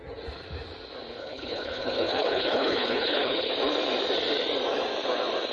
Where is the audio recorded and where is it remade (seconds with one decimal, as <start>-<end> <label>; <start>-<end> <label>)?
0.0-1.2 recorded; 1.2-3.5 remade; 3.5-5.5 recorded